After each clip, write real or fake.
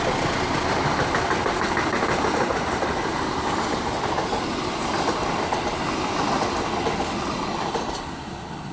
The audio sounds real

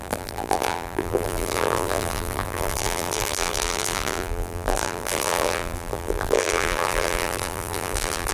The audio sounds fake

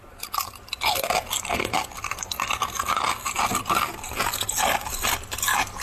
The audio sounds real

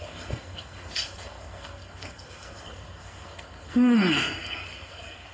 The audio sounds fake